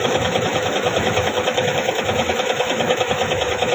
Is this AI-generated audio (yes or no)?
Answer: yes